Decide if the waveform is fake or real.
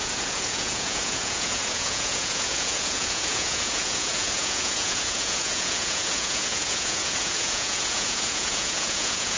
fake